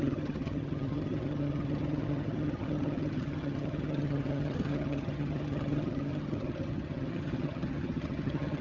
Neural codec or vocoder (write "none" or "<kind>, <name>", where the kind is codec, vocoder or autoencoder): vocoder, HiFi-GAN